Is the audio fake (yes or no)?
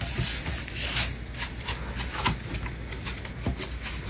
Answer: no